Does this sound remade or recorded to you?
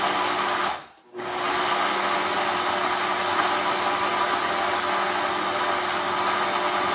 recorded